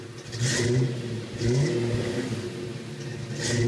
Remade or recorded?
recorded